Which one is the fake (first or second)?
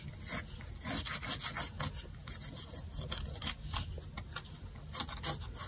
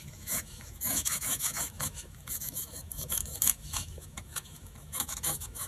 second